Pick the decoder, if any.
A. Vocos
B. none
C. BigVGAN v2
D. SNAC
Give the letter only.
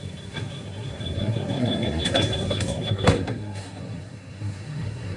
D